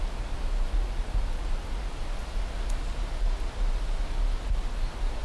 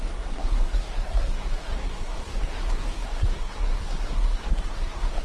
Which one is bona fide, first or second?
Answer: first